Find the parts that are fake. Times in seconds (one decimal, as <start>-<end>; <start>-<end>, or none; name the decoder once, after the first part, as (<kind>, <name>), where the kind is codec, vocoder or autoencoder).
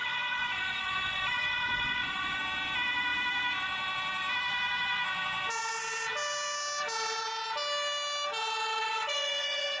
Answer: 0.0-2.4 (vocoder, Vocos); 8.7-9.8